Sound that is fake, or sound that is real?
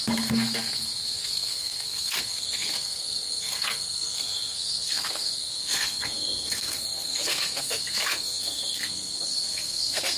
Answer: fake